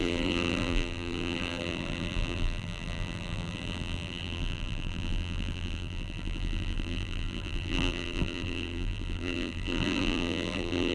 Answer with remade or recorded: remade